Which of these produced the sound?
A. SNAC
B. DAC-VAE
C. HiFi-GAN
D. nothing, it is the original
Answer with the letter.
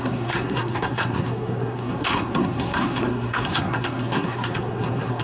A